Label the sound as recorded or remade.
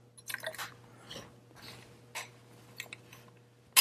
recorded